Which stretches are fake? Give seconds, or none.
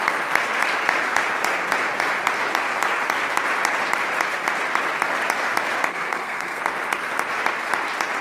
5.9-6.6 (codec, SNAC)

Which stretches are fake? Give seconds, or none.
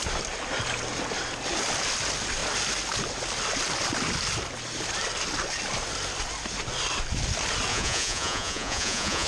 7.7-9.3 (vocoder, Vocos)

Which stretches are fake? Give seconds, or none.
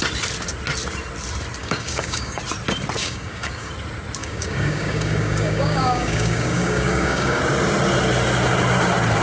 1.6-2.4 (codec, DAC); 3.0-3.7; 4.2-7.4